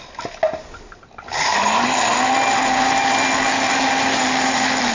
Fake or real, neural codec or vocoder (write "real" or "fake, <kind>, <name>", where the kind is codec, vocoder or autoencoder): real